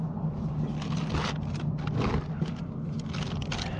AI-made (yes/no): no